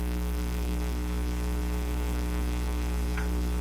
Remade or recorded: remade